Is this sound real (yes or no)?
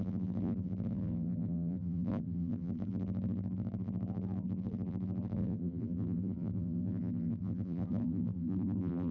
no